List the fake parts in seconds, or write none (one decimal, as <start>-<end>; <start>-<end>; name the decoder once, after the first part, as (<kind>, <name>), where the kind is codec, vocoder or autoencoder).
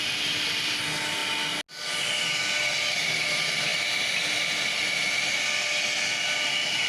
none